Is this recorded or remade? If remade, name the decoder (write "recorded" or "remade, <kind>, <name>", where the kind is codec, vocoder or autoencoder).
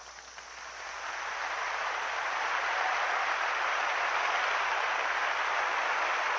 recorded